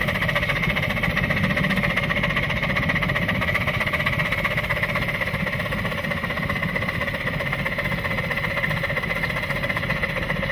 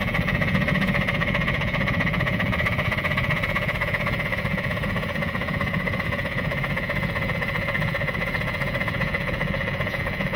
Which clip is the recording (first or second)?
first